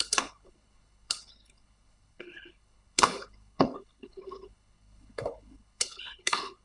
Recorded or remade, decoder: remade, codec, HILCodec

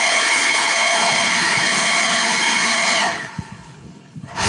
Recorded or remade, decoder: remade, codec, HILCodec